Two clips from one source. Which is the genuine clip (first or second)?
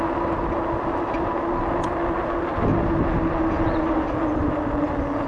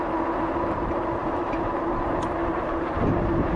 first